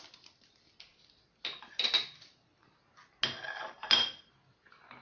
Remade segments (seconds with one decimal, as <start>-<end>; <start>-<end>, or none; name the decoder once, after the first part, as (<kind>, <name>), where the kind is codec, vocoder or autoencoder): none